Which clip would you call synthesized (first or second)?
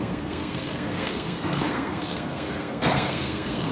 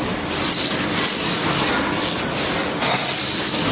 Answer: first